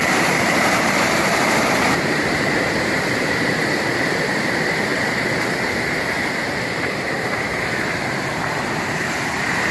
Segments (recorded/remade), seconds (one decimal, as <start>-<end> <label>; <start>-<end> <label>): 0.0-9.7 remade